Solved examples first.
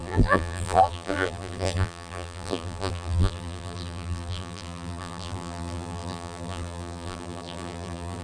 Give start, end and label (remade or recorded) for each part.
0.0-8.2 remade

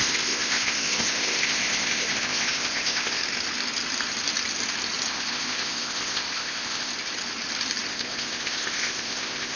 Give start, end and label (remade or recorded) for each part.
0.0-3.2 remade; 3.2-5.1 recorded; 5.1-6.9 remade; 6.9-7.9 recorded; 7.9-9.6 remade

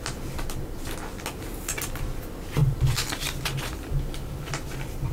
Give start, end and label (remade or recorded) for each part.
0.0-2.6 recorded; 2.6-5.1 remade

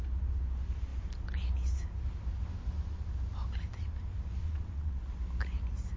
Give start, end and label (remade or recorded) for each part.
0.0-4.4 recorded; 4.4-5.0 remade; 5.0-6.0 recorded

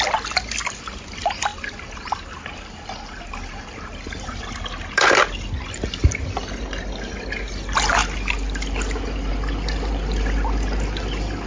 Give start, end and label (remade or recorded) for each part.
0.0-11.5 recorded

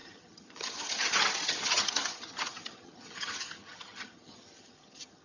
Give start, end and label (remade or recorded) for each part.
0.0-5.2 remade

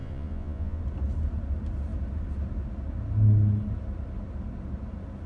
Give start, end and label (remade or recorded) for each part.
0.0-0.8 remade; 0.8-5.3 recorded

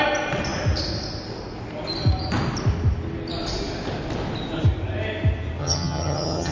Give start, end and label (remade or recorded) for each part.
0.0-5.6 recorded; 5.6-6.5 remade